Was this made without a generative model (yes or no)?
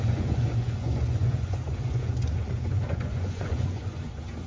no